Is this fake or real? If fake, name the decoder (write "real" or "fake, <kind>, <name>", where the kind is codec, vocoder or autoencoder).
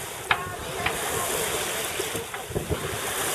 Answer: real